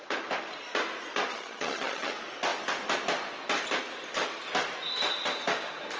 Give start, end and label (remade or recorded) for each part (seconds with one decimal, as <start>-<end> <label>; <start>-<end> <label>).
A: 0.0-1.3 recorded; 1.3-2.1 remade; 2.1-6.0 recorded